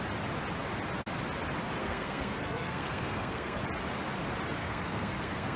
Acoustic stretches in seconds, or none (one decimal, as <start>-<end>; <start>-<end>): 0.0-1.8; 3.6-4.6